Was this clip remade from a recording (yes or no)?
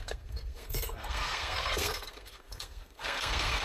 yes